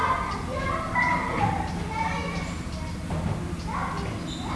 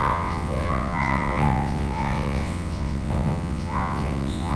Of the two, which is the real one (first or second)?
first